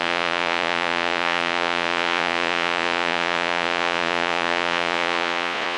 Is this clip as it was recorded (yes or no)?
no